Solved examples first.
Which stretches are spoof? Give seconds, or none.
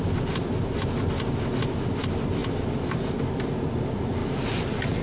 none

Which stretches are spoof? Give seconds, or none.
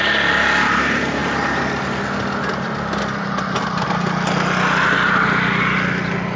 none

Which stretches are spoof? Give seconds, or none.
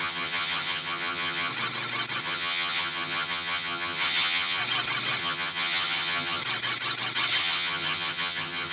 0.0-1.5 (vocoder, HiFi-GAN); 2.2-4.6; 5.2-6.4; 7.4-8.7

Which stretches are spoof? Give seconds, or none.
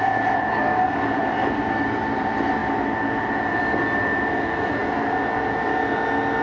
none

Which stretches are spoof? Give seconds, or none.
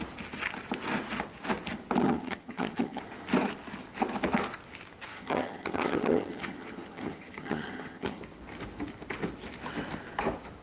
2.0-3.0 (vocoder, HiFi-GAN); 5.1-8.2